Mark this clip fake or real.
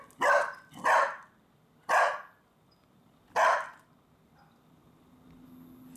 real